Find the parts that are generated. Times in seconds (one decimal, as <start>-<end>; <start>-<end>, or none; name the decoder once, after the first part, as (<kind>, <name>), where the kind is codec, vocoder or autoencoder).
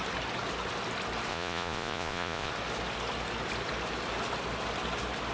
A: 1.3-2.5 (vocoder, Vocos)